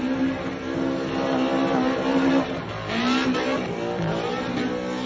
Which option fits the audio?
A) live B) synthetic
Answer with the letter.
A